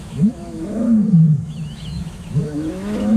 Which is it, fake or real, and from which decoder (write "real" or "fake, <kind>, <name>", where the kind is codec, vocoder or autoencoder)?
fake, autoencoder, DAC-VAE